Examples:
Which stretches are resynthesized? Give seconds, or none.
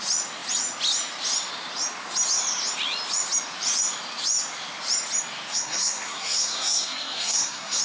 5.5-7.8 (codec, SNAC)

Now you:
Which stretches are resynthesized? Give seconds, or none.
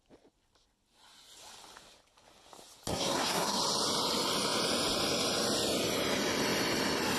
2.9-3.6 (codec, SNAC)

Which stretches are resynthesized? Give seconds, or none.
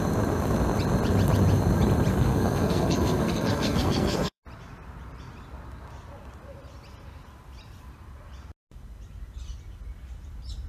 2.1-4.4 (codec, SNAC)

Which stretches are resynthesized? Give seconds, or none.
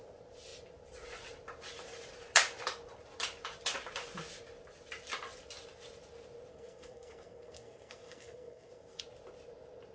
6.5-9.0 (codec, SNAC)